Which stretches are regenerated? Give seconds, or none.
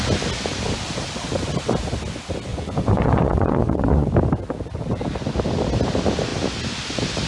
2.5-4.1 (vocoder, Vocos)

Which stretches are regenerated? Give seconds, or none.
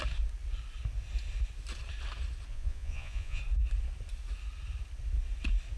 2.5-3.4 (vocoder, Vocos)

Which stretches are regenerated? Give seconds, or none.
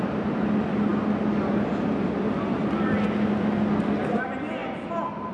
none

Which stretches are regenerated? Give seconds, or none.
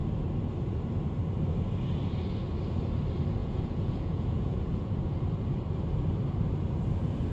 3.4-4.9 (vocoder, Vocos)